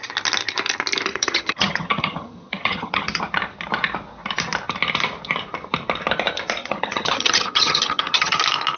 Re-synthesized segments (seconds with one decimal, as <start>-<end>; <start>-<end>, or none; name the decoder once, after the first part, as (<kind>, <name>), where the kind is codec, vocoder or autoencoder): 1.1-3.2 (vocoder, HiFi-GAN); 6.6-8.4